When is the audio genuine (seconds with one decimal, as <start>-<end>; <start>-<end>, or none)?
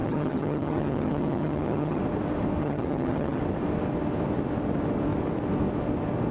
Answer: 2.0-2.6; 3.4-6.3